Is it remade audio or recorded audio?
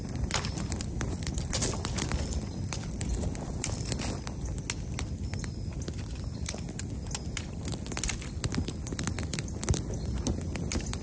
recorded